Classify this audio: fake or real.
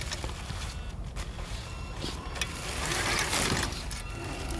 real